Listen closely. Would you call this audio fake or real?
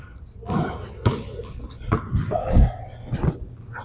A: real